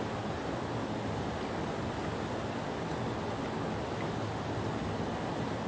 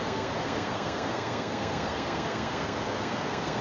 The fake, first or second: second